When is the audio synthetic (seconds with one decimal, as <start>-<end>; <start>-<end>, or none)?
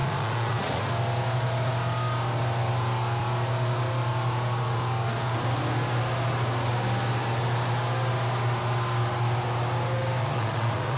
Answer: 0.0-0.9; 10.2-11.0